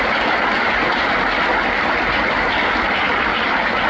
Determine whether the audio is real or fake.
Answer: real